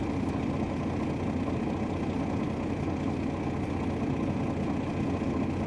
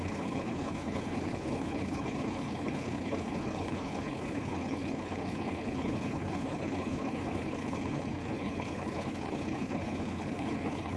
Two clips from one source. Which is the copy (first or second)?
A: second